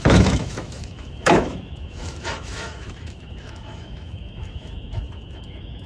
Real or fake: fake